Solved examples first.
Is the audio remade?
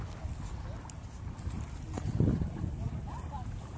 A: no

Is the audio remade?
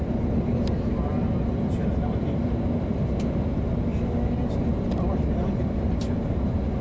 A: no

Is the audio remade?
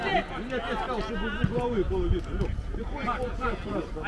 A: no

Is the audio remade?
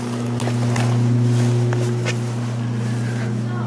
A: no